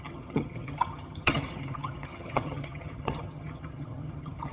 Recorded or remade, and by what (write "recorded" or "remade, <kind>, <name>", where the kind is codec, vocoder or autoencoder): remade, vocoder, HiFi-GAN